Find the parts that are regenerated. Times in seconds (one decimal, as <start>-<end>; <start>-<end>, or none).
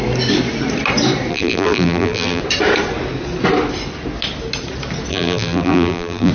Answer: 1.3-2.4; 5.1-6.3